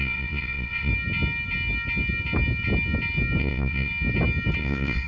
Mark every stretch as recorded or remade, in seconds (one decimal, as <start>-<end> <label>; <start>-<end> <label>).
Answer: 0.0-0.9 remade; 0.9-3.4 recorded; 3.4-3.9 remade; 3.9-4.6 recorded; 4.6-5.1 remade